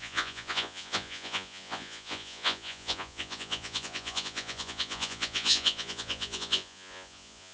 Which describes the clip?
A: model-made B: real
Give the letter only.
A